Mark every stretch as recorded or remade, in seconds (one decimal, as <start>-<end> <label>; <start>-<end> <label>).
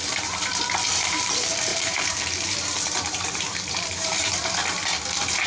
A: 0.0-0.9 recorded; 0.9-4.6 remade; 4.6-5.5 recorded